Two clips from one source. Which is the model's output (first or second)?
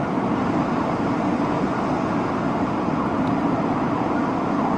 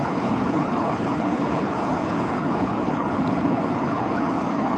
second